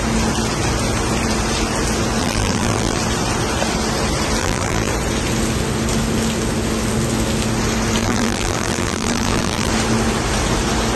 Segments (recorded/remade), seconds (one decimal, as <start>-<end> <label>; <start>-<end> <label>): 0.0-2.2 recorded; 2.2-3.0 remade; 3.0-4.4 recorded; 4.4-4.9 remade; 4.9-8.0 recorded; 8.0-9.7 remade; 9.7-11.0 recorded